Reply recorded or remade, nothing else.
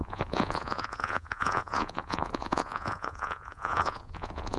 remade